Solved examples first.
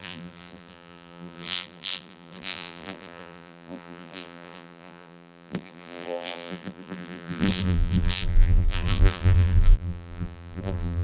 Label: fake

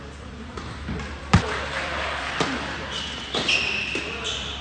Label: fake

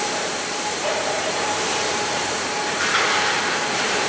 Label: fake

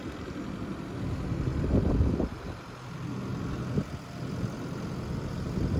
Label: real